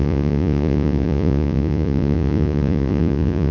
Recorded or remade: remade